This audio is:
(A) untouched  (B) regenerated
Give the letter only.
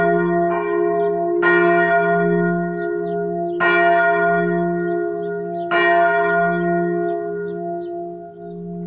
A